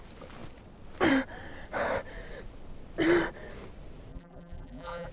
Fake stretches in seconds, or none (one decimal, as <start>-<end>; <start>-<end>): 4.1-5.1